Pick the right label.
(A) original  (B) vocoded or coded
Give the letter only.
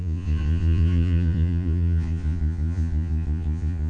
B